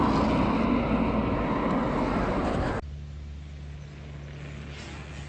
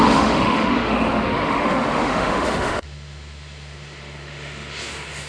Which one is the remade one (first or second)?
second